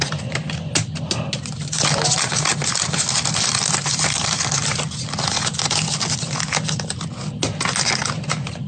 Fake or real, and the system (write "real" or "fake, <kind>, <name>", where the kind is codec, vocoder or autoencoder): real